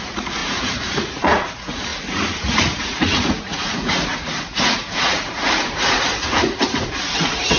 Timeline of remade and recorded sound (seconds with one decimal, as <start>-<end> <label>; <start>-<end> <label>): 0.0-7.6 remade